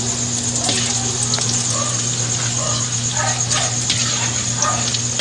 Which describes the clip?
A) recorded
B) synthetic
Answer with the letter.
A